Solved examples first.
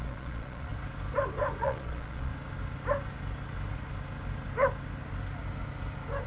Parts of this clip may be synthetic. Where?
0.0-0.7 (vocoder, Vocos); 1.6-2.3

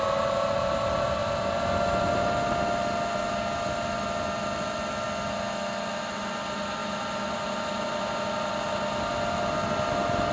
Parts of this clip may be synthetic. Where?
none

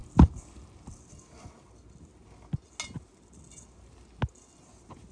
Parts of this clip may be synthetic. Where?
none

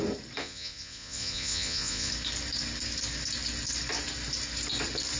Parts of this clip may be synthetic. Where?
0.4-2.1 (vocoder, Vocos)

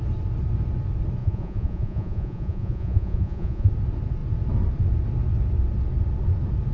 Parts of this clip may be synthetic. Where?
1.2-3.7 (vocoder, Vocos)

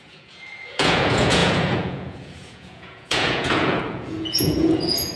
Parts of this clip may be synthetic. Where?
0.0-5.2 (vocoder, Vocos)